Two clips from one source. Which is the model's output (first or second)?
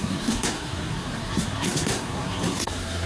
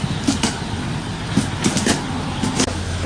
first